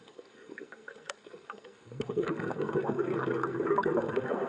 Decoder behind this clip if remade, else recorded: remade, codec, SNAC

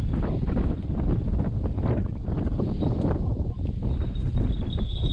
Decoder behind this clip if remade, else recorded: recorded